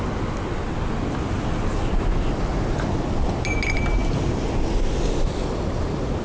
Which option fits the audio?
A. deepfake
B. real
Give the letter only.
B